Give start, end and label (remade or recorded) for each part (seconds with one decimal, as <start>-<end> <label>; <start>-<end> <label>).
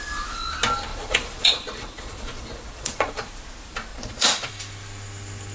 0.0-0.9 recorded; 0.9-3.1 remade; 3.1-3.9 recorded; 3.9-4.5 remade; 4.5-5.5 recorded